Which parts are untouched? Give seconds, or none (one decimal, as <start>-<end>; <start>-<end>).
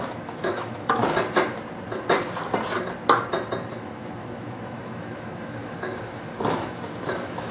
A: 1.0-3.7